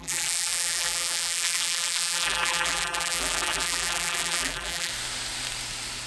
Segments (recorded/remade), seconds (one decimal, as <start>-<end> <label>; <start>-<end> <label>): 0.0-4.9 remade; 4.9-6.1 recorded